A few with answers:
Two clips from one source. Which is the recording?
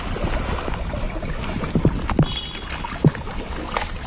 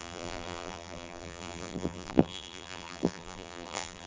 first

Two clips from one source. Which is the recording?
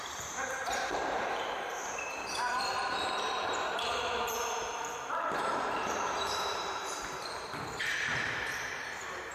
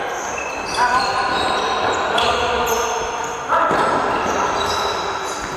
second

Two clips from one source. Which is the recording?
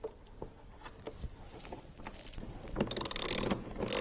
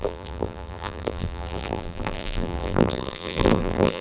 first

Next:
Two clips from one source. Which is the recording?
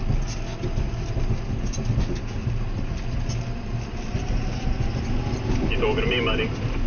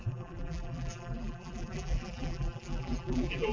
first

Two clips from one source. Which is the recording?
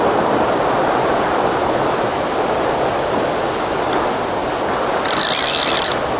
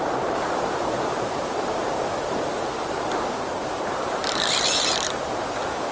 first